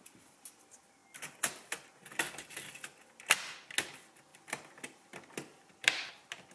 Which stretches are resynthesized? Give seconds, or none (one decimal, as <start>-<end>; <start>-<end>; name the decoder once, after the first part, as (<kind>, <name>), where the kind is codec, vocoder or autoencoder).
none